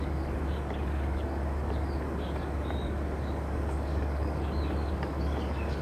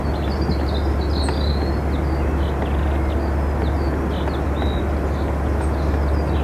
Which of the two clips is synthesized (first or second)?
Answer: first